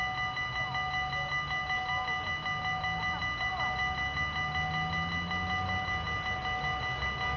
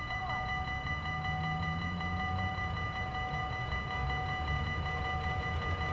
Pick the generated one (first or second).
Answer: second